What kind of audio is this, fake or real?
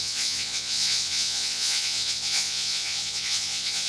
fake